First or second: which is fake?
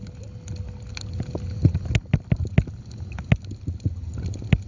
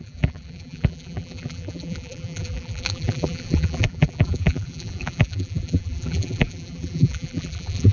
second